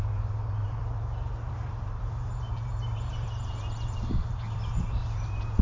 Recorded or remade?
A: remade